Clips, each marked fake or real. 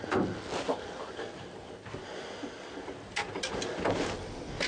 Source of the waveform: real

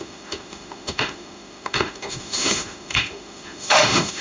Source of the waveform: fake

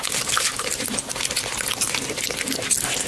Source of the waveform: real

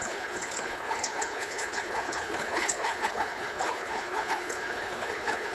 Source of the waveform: fake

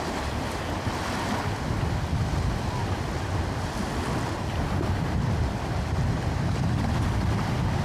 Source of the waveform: real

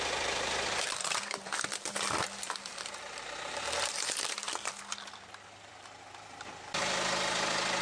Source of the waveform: fake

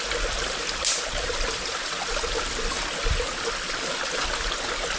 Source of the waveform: real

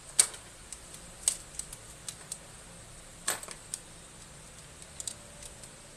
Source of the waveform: real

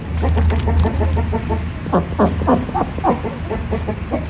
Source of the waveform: real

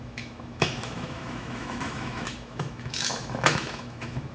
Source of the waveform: fake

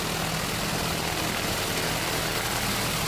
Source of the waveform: real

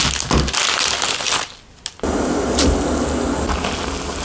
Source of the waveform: real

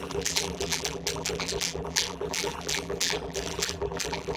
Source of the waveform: fake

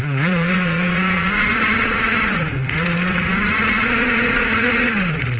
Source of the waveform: fake